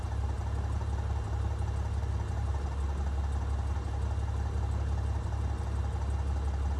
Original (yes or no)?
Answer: yes